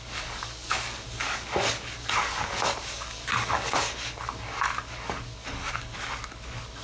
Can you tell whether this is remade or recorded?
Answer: remade